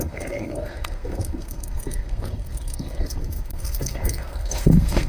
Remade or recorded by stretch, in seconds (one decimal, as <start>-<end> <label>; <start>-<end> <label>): 0.0-5.1 remade

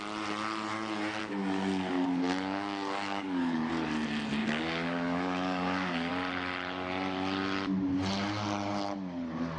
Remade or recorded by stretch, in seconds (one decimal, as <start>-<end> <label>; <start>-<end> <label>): 0.0-1.2 recorded; 1.2-3.7 remade; 3.7-4.4 recorded; 4.4-6.1 remade; 6.1-9.6 recorded

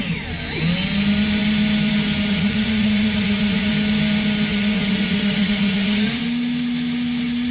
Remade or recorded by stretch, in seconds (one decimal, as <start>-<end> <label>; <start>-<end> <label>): 0.0-2.3 recorded; 2.3-3.7 remade; 3.7-4.5 recorded; 4.5-6.2 remade; 6.2-7.5 recorded

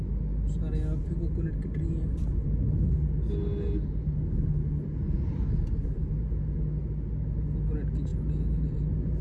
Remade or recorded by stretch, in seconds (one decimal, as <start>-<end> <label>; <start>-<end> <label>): 0.0-9.2 recorded

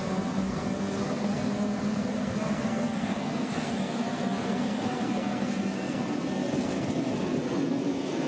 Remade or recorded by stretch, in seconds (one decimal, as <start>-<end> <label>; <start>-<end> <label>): 0.0-8.3 remade

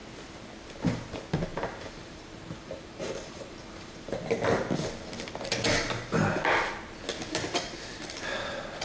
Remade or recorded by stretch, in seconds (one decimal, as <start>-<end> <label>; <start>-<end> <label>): 0.0-1.5 recorded; 1.5-4.2 remade; 4.2-8.8 recorded